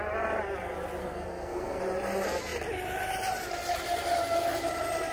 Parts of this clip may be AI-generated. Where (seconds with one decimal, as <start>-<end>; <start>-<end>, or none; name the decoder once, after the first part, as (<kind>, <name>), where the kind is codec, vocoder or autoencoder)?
1.0-1.8 (codec, SNAC)